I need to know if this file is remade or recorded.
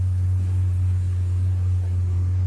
remade